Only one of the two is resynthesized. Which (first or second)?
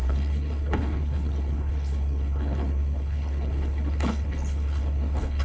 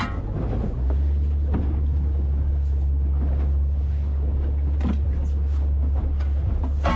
first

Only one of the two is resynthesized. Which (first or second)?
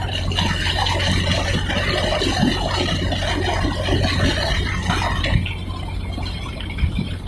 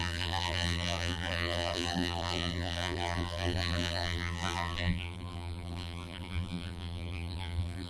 second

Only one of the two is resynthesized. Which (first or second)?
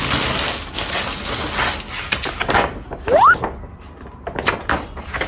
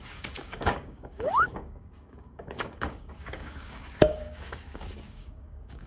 second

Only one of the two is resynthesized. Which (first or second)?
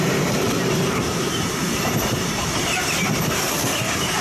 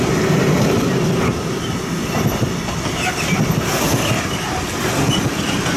first